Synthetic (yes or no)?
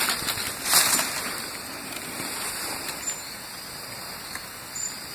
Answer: no